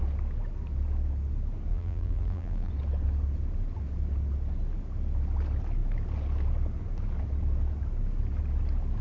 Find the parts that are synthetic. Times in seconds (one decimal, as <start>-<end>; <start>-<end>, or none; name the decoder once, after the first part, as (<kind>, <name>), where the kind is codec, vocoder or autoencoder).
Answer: 1.7-2.7 (vocoder, BigVGAN v2)